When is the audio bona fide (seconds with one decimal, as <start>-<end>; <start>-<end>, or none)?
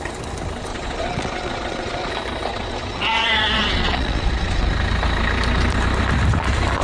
0.0-0.7; 2.1-2.5; 4.7-6.8